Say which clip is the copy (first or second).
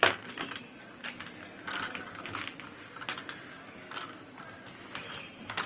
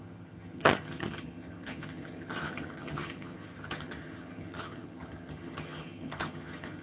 second